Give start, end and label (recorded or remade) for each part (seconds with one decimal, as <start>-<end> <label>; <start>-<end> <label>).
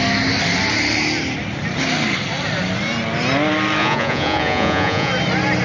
0.0-3.8 recorded; 3.8-5.1 remade; 5.1-5.6 recorded